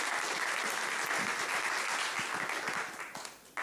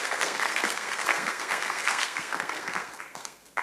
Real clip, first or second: first